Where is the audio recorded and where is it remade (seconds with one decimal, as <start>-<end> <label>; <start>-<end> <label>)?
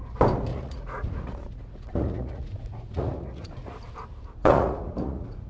0.0-0.5 recorded; 0.5-3.8 remade; 3.8-4.4 recorded; 4.4-5.5 remade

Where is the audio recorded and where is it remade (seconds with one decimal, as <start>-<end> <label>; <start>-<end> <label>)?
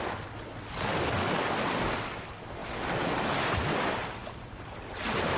0.0-5.4 recorded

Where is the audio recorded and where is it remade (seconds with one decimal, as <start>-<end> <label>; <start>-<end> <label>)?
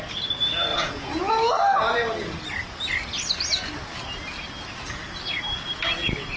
0.0-0.7 recorded; 0.7-1.3 remade; 1.3-6.4 recorded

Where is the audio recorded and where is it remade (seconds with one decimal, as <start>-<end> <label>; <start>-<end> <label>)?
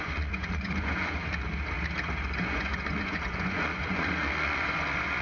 0.0-1.2 remade; 1.2-2.4 recorded; 2.4-5.2 remade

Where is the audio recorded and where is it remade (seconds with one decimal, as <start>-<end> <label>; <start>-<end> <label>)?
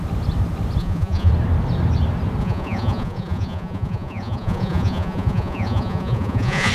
0.0-0.8 recorded; 0.8-1.3 remade; 1.3-2.4 recorded; 2.4-6.7 remade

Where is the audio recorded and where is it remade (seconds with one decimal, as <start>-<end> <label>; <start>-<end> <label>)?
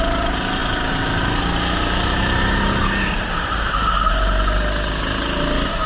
0.0-5.9 recorded